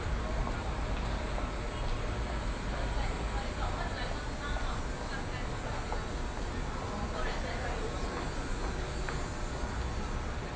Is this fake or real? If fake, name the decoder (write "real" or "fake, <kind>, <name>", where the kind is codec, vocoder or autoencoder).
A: real